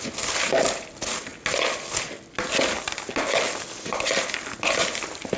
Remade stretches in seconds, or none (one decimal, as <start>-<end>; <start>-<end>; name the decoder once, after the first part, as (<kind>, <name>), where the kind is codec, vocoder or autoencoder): none